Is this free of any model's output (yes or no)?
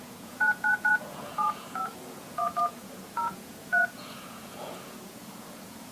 no